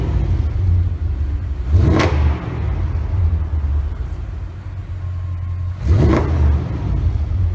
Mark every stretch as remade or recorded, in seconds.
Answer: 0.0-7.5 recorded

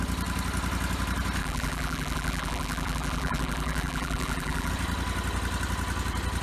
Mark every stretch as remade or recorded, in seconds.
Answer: 0.0-1.4 recorded; 1.4-4.7 remade; 4.7-6.4 recorded

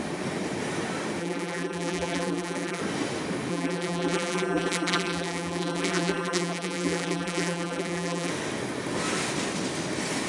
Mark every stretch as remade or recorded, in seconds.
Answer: 0.0-1.2 recorded; 1.2-2.8 remade; 2.8-3.5 recorded; 3.5-8.3 remade; 8.3-10.3 recorded

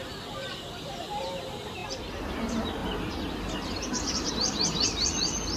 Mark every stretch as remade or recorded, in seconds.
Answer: 0.0-5.6 remade

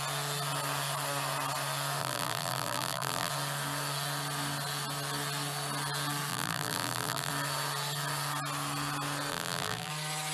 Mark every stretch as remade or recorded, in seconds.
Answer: 0.0-2.0 recorded; 2.0-3.3 remade; 3.3-6.3 recorded; 6.3-7.3 remade; 7.3-9.3 recorded; 9.3-9.9 remade; 9.9-10.3 recorded

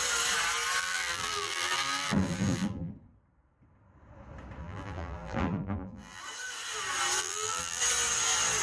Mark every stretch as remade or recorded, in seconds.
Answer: 0.0-0.8 recorded; 0.8-2.9 remade; 2.9-4.6 recorded; 4.6-6.2 remade; 6.2-7.2 recorded; 7.2-7.8 remade; 7.8-8.6 recorded

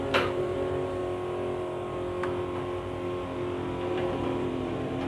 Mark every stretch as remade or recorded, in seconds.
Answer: 0.0-1.0 remade; 1.0-3.9 recorded; 3.9-5.1 remade

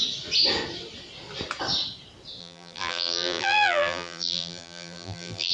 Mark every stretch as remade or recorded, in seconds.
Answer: 0.0-2.4 recorded; 2.4-5.5 remade